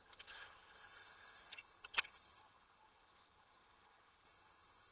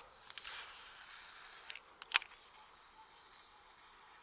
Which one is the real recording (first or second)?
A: second